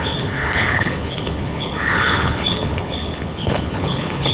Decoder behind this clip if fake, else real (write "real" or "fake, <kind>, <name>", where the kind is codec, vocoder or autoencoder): fake, codec, HILCodec